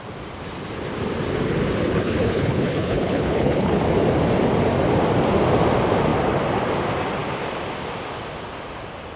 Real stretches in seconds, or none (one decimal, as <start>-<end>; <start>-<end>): 0.0-1.8; 3.8-9.2